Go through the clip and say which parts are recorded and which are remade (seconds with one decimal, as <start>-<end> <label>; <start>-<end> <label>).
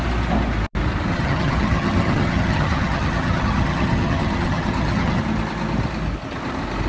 0.0-1.1 recorded; 1.1-5.2 remade; 5.2-6.9 recorded